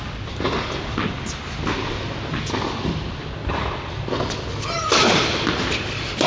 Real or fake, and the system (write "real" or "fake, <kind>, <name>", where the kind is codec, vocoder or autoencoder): real